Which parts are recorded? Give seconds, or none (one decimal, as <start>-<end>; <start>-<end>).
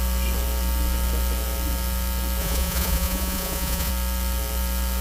0.0-2.4; 3.9-5.0